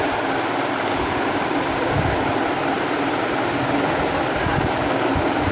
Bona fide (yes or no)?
yes